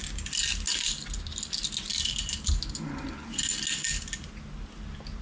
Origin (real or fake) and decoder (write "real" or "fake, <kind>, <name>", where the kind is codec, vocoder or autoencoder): real